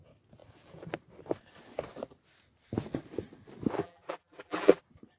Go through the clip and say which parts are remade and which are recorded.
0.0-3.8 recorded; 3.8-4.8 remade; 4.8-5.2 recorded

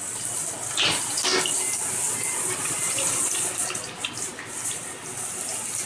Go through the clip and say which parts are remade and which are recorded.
0.0-5.9 recorded

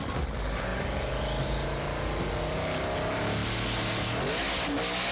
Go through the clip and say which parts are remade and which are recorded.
0.0-5.1 recorded

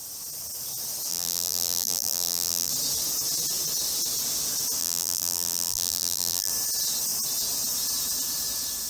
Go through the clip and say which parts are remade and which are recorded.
0.0-1.1 recorded; 1.1-2.7 remade; 2.7-4.8 recorded; 4.8-6.5 remade; 6.5-8.9 recorded

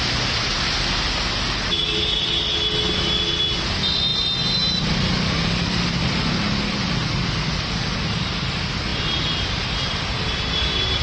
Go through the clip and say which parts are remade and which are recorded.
0.0-11.0 recorded

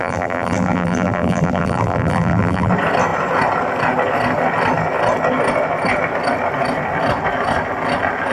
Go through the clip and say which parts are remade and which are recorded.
0.0-2.7 remade; 2.7-8.3 recorded

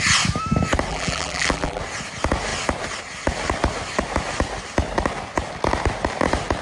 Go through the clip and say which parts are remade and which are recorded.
0.0-0.9 recorded; 0.9-1.8 remade; 1.8-6.6 recorded

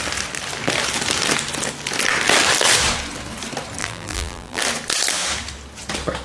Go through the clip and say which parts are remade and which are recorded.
0.0-3.8 recorded; 3.8-4.6 remade; 4.6-6.2 recorded